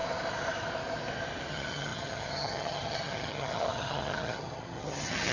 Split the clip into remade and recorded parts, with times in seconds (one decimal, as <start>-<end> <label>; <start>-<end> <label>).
0.0-1.5 recorded; 1.5-5.3 remade